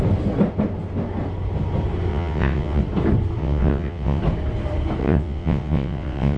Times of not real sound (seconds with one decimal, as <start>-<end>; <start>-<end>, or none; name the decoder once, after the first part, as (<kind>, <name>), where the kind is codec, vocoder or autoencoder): 2.1-2.8 (vocoder, WaveNeXt); 3.4-4.2; 5.0-6.4